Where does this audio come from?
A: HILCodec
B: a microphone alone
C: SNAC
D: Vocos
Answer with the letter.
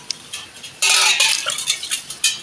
B